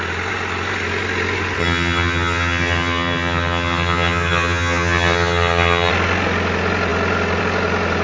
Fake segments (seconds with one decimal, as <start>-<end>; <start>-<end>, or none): 1.6-5.9